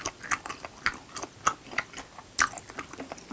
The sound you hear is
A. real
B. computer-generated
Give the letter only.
A